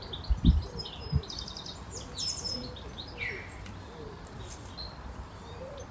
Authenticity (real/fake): fake